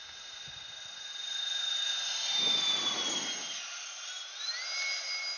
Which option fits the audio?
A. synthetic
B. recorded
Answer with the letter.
B